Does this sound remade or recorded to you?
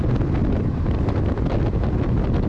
recorded